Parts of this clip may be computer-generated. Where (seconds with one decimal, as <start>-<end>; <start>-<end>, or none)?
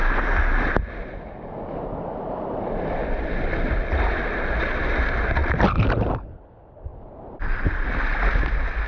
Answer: none